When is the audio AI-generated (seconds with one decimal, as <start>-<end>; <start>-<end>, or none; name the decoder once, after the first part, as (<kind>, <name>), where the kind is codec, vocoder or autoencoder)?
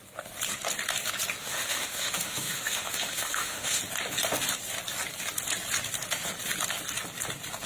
1.4-3.8 (autoencoder, DAC-VAE)